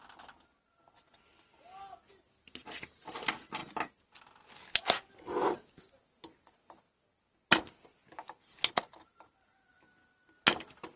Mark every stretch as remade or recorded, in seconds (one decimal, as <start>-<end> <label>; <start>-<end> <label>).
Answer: 0.0-11.0 recorded